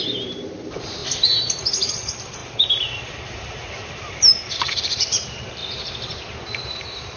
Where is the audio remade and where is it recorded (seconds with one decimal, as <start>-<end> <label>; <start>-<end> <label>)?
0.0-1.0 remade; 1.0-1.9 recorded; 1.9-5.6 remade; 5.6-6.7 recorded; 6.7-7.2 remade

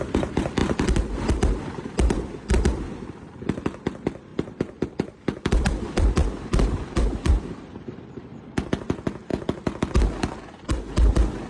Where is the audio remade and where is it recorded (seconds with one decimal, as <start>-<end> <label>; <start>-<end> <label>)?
0.0-0.6 remade; 0.6-1.6 recorded; 1.6-6.2 remade; 6.2-7.3 recorded; 7.3-9.3 remade; 9.3-11.5 recorded

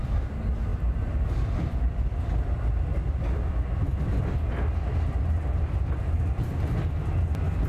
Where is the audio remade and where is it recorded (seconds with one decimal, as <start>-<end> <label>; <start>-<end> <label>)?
0.0-2.9 remade; 2.9-7.7 recorded

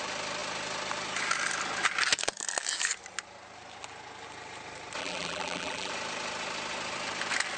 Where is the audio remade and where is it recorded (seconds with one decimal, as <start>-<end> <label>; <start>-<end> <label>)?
0.0-5.0 recorded; 5.0-5.9 remade; 5.9-7.6 recorded

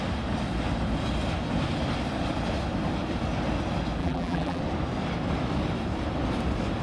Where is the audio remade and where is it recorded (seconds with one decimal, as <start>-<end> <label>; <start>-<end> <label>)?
0.0-4.0 recorded; 4.0-4.6 remade; 4.6-6.8 recorded

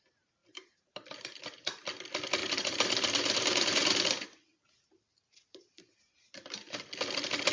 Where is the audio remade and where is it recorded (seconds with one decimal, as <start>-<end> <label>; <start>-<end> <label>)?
0.0-0.4 recorded; 0.4-1.4 remade; 1.4-2.4 recorded; 2.4-6.9 remade; 6.9-7.5 recorded